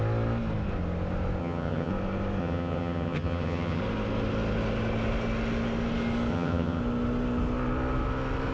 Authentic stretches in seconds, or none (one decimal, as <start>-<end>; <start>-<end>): 0.0-1.4; 1.9-2.4; 3.8-6.3; 6.8-8.5